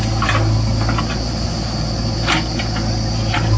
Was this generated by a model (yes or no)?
no